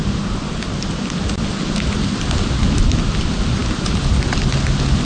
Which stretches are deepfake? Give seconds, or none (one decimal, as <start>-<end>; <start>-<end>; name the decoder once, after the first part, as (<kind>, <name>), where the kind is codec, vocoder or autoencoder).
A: none